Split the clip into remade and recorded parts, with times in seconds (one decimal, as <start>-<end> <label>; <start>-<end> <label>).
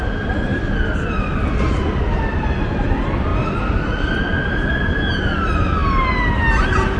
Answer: 0.0-7.0 recorded